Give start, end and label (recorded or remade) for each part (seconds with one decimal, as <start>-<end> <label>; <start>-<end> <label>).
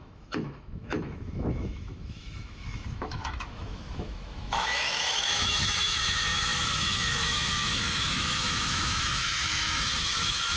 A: 0.0-10.6 remade